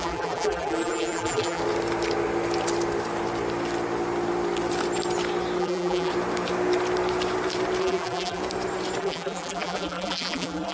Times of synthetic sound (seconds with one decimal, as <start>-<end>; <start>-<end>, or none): 0.0-1.6; 5.6-6.1; 7.8-8.4; 9.0-10.7